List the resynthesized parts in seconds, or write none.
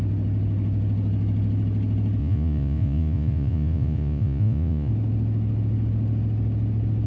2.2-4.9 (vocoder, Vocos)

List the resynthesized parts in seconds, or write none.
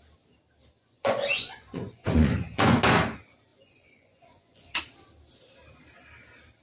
0.8-2.8 (vocoder, Vocos); 3.5-4.8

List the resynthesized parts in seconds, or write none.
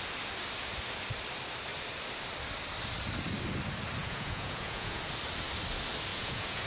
4.0-5.0 (vocoder, Vocos); 6.1-6.7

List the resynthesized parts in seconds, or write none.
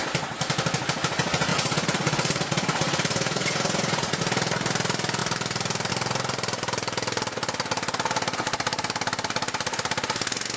1.5-4.2 (vocoder, Vocos)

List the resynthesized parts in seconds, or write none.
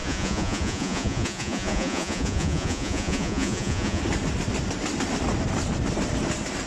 0.0-4.0 (vocoder, Vocos)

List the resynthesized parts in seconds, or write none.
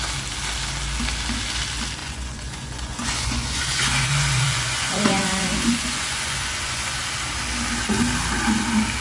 2.0-7.0 (vocoder, Vocos)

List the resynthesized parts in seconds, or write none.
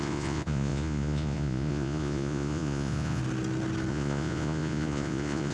0.0-3.2 (vocoder, Vocos); 3.9-5.5